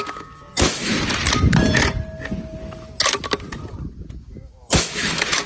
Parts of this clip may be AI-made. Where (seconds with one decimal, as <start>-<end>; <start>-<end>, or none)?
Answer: 0.0-0.9; 4.2-5.5